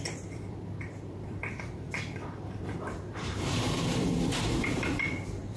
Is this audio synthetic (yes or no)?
yes